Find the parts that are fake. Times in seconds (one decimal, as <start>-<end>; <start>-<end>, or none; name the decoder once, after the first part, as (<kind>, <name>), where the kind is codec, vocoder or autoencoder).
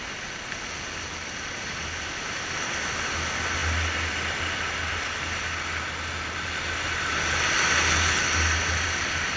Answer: none